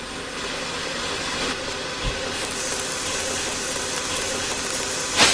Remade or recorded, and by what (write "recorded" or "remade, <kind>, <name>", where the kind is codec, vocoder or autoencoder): recorded